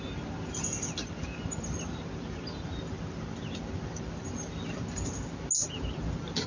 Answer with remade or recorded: recorded